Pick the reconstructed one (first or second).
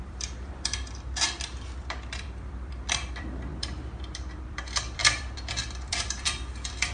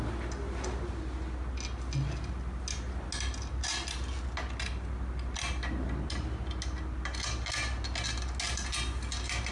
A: first